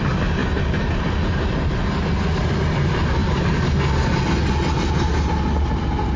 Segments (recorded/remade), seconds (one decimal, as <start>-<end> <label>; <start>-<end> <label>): 0.0-6.2 recorded

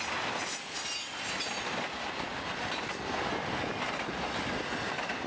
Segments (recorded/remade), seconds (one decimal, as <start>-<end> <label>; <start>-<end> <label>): 0.0-5.3 recorded

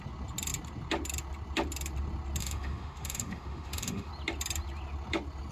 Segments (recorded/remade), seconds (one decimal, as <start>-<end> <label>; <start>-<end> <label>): 0.0-2.4 recorded; 2.4-4.1 remade; 4.1-5.5 recorded

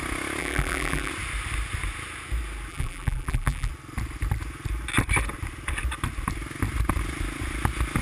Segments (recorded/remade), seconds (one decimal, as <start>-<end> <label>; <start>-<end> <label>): 0.0-0.4 recorded; 0.4-1.1 remade; 1.1-2.7 recorded; 2.7-3.7 remade; 3.7-8.0 recorded

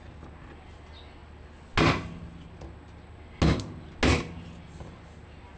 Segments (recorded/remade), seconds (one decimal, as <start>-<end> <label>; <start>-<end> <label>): 0.0-5.6 recorded

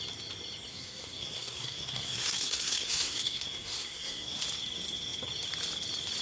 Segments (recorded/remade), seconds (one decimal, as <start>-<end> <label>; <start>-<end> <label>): 0.0-0.7 recorded; 0.7-4.4 remade; 4.4-6.2 recorded

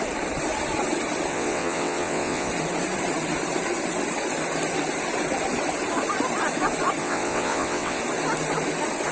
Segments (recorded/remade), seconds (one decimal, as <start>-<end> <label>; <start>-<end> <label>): 0.0-1.3 recorded; 1.3-2.5 remade; 2.5-7.0 recorded; 7.0-8.0 remade; 8.0-9.1 recorded